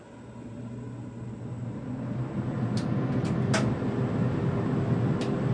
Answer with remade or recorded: recorded